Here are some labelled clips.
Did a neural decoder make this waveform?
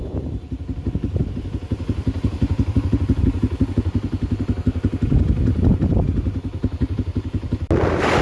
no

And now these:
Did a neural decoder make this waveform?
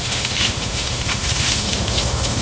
yes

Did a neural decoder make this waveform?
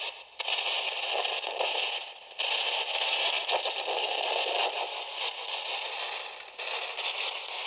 no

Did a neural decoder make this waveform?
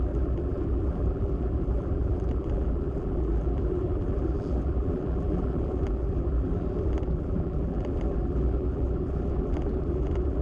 yes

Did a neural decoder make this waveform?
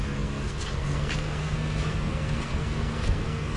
yes